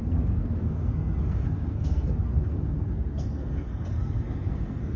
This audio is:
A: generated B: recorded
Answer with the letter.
A